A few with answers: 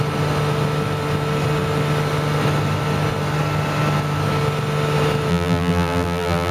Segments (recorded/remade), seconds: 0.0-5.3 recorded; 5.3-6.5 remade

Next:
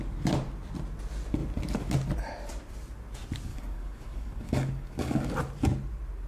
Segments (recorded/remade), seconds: 0.0-3.5 recorded; 3.5-5.3 remade; 5.3-6.3 recorded

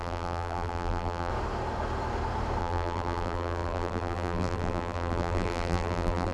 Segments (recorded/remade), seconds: 0.0-1.3 remade; 1.3-2.6 recorded; 2.6-6.3 remade